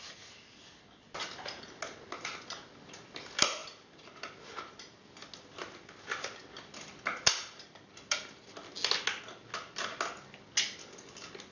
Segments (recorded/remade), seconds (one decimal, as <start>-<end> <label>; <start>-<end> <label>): 0.0-11.5 recorded